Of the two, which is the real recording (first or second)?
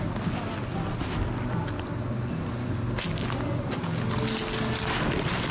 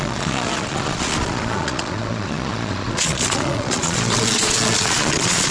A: first